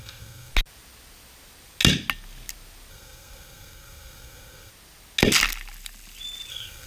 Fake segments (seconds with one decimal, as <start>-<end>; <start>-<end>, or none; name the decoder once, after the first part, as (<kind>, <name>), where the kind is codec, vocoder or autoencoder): 0.0-0.5 (codec, SNAC); 2.9-4.7; 6.5-6.9